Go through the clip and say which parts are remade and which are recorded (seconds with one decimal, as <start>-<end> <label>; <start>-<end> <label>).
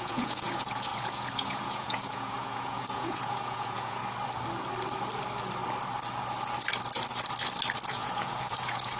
0.0-4.0 remade; 4.0-7.9 recorded; 7.9-9.0 remade